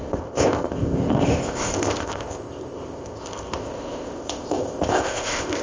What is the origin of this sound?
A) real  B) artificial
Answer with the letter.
B